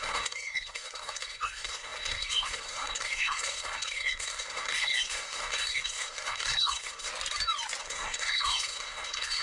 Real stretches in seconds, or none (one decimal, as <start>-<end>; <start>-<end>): 7.1-7.8